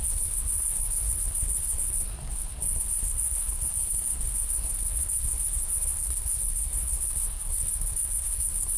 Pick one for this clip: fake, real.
fake